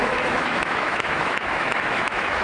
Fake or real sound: fake